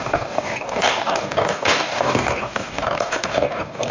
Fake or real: fake